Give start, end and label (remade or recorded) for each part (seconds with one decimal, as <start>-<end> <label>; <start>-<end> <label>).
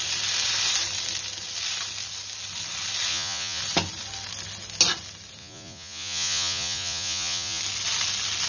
0.0-3.1 recorded; 3.1-3.6 remade; 3.6-5.4 recorded; 5.4-7.6 remade; 7.6-8.5 recorded